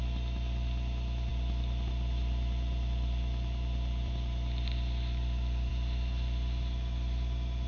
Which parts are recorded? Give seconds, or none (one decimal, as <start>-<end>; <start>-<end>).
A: 0.0-7.7